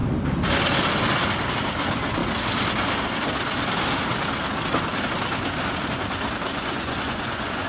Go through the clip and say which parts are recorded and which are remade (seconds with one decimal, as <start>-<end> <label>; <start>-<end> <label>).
0.0-6.5 recorded; 6.5-7.7 remade